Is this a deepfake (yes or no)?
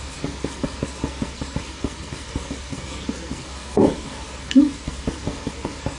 yes